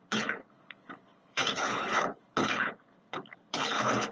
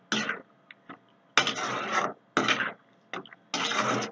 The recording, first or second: second